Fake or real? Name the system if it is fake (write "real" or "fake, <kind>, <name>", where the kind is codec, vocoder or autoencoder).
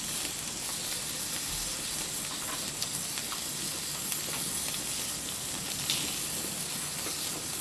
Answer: real